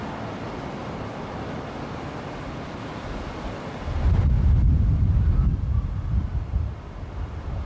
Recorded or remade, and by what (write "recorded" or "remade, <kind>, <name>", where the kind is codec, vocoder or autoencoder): recorded